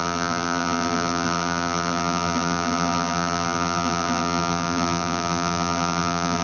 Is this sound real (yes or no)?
no